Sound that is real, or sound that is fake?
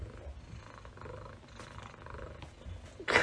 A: real